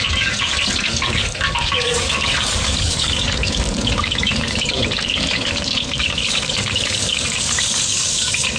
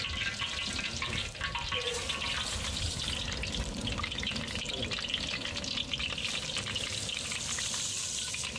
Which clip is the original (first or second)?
second